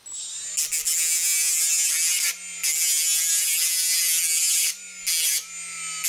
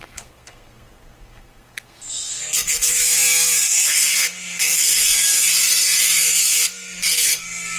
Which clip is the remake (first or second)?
second